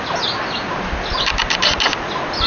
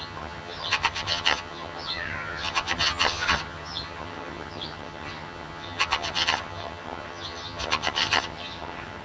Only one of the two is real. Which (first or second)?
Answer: first